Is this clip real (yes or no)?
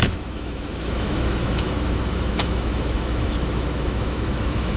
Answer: no